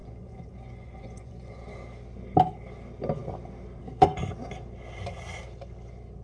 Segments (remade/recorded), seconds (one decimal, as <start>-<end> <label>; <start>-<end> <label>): 0.0-1.6 remade; 1.6-6.2 recorded